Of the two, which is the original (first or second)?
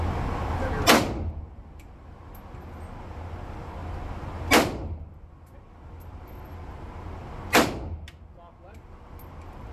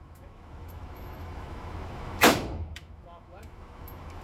first